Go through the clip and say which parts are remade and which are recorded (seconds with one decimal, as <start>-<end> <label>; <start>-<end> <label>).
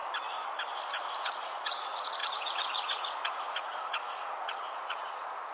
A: 0.0-0.8 recorded; 0.8-5.5 remade